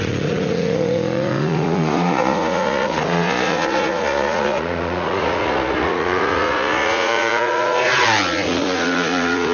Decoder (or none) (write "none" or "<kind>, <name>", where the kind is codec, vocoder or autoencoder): vocoder, Vocos